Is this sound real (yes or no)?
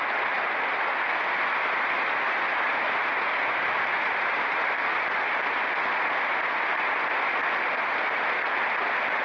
yes